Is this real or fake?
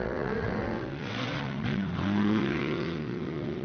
fake